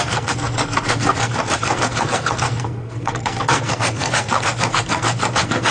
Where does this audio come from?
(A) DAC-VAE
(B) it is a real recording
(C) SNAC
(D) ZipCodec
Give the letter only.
C